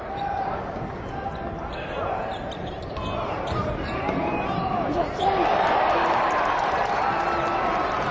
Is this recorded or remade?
recorded